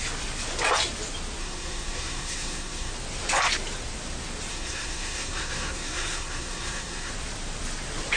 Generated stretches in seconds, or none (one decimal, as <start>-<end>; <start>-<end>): 1.4-2.9; 4.5-7.1